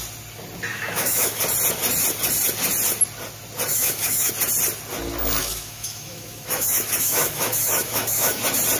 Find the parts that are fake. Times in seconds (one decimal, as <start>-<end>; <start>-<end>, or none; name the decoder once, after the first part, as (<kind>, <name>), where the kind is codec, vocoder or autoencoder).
0.7-1.4 (autoencoder, DAC-VAE); 3.7-4.3; 5.4-8.4